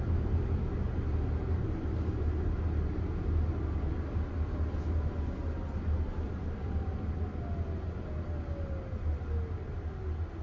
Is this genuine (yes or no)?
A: yes